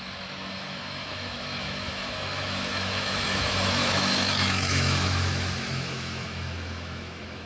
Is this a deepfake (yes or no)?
yes